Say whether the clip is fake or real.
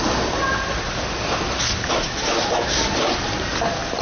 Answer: real